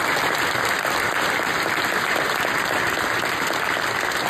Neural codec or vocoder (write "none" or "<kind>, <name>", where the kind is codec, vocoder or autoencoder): none